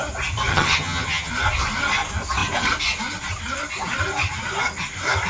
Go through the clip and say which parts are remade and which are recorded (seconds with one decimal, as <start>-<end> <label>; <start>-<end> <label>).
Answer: 0.0-0.5 recorded; 0.5-1.3 remade; 1.3-5.3 recorded